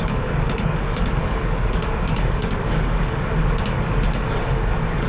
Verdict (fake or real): fake